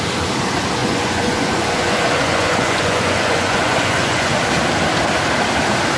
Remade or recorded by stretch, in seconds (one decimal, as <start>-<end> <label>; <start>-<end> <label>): 0.0-0.8 recorded; 0.8-4.4 remade; 4.4-6.0 recorded